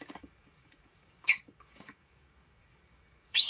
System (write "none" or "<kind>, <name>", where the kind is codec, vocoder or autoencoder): codec, DAC